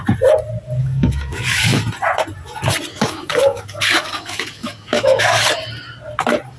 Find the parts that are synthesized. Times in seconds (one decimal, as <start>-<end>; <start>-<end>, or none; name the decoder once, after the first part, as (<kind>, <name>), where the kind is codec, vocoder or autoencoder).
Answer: 0.8-1.8 (codec, DAC); 2.9-5.4